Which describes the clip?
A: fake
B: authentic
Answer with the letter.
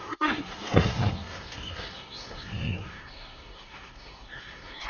A